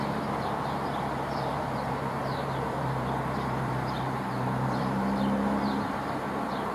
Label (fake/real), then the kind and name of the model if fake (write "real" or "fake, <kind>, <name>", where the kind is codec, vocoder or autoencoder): fake, vocoder, BigVGAN v2